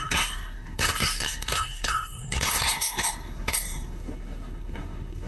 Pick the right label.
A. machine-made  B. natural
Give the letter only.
A